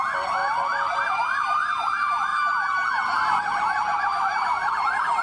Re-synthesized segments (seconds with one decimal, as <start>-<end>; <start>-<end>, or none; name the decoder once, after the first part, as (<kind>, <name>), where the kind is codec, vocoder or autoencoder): 0.0-0.4 (vocoder, BigVGAN v2); 1.0-2.3; 4.0-5.2